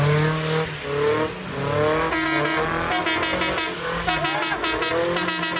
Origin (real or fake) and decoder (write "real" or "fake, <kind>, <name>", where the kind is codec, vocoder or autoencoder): real